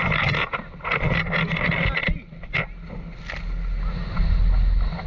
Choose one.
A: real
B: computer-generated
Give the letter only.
A